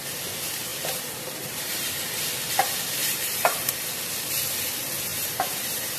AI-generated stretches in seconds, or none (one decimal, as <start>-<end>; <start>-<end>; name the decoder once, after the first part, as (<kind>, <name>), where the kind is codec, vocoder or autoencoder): 0.7-2.1 (vocoder, BigVGAN v2); 3.0-3.7; 5.1-5.6